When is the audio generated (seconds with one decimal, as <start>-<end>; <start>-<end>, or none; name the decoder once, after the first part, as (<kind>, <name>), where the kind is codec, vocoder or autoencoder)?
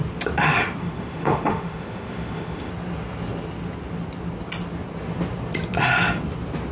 0.8-2.7 (autoencoder, DAC-VAE)